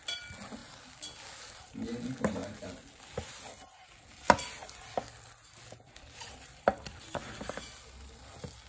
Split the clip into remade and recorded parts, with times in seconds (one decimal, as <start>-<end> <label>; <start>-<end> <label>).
0.0-8.7 recorded